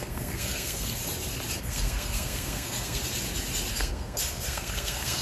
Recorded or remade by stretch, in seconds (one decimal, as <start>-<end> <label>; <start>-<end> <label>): 0.0-1.0 remade; 1.0-1.6 recorded; 1.6-3.0 remade; 3.0-3.7 recorded; 3.7-5.2 remade